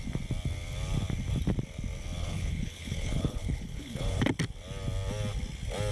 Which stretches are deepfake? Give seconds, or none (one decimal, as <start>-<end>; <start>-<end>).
2.2-4.2